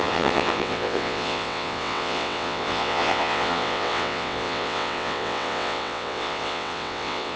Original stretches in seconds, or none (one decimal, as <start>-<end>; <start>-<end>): none